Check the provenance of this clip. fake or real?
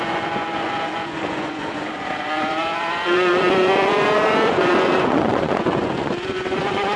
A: fake